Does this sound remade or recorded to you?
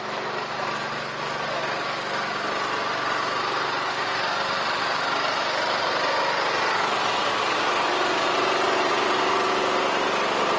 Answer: recorded